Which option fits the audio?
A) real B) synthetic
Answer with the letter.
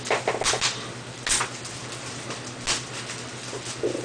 A